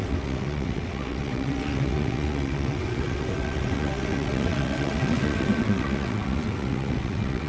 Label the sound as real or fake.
fake